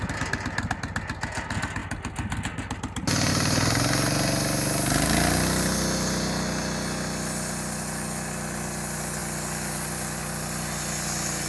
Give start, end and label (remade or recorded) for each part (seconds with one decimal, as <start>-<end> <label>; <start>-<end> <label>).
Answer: 0.0-11.5 recorded